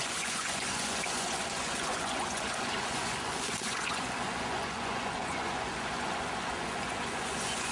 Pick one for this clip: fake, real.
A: fake